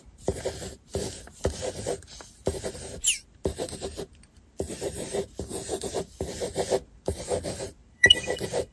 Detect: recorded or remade remade